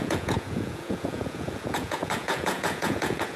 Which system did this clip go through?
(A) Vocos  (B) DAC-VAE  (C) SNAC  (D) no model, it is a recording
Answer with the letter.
A